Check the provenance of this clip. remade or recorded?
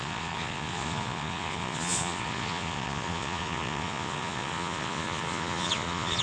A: remade